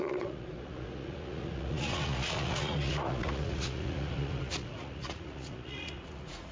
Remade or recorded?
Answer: remade